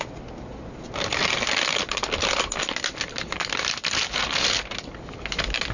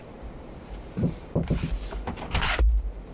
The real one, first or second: first